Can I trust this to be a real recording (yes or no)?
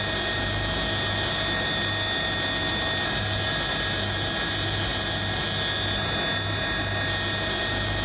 yes